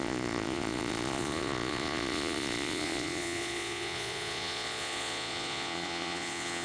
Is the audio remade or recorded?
remade